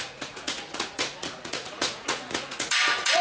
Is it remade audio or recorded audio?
remade